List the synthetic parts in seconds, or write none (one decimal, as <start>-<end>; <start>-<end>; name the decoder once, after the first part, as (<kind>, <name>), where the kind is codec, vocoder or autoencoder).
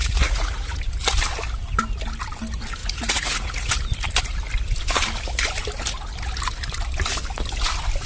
0.0-0.8 (vocoder, Vocos); 2.8-3.8